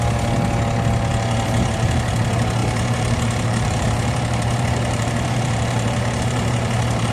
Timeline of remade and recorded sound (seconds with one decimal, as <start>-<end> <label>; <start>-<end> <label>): 0.0-1.1 recorded; 1.1-2.1 remade; 2.1-2.6 recorded; 2.6-7.1 remade